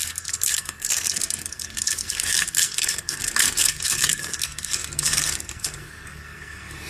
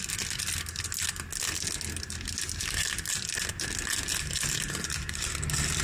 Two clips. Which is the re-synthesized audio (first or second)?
first